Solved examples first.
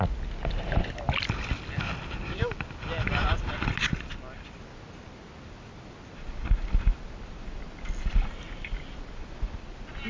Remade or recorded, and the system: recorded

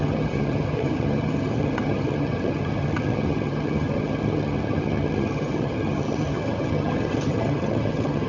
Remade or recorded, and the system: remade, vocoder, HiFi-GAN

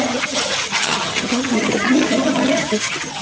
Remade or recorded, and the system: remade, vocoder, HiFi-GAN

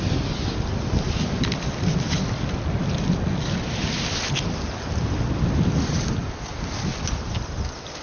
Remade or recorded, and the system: recorded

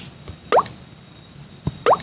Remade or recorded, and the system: recorded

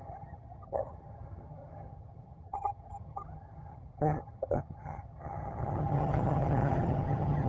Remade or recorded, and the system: remade, vocoder, HiFi-GAN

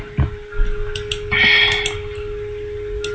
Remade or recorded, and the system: recorded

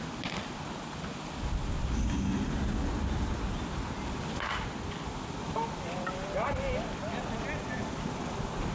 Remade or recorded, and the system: recorded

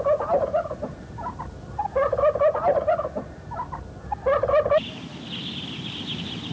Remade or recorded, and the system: recorded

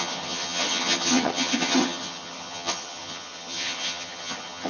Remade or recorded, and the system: remade, vocoder, HiFi-GAN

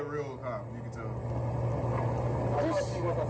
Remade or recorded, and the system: recorded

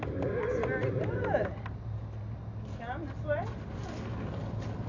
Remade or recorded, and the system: recorded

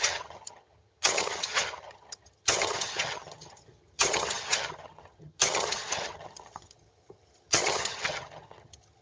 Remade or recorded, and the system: remade, vocoder, HiFi-GAN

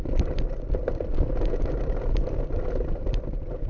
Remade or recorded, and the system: recorded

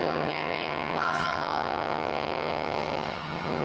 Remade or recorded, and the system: remade, vocoder, HiFi-GAN